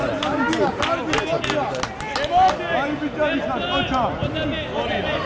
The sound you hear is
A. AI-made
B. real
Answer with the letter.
B